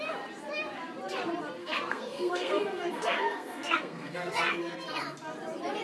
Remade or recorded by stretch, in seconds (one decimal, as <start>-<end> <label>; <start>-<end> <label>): 0.0-1.6 recorded; 1.6-5.0 remade; 5.0-5.8 recorded